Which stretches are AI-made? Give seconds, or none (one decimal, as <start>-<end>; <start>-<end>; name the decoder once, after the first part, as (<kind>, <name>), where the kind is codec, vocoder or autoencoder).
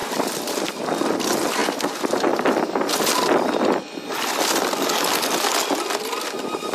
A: 0.0-0.9 (vocoder, BigVGAN v2)